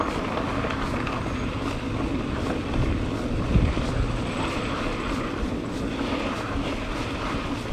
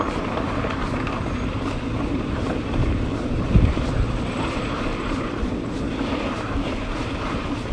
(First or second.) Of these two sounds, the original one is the first